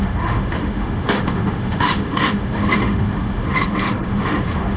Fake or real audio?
fake